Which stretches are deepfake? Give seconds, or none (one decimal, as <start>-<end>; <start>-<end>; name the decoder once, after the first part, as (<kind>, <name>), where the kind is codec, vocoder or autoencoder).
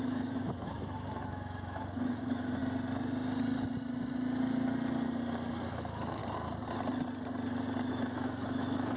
0.0-2.6 (autoencoder, DAC-VAE); 5.7-6.2; 7.9-9.0